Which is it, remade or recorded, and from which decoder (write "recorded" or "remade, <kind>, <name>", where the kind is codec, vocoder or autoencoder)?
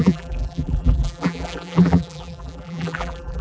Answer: remade, vocoder, BigVGAN v2